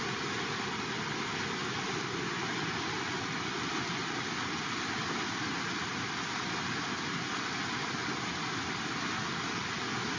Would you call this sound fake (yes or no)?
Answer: no